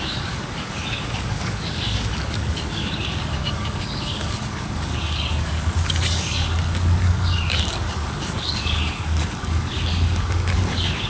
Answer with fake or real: fake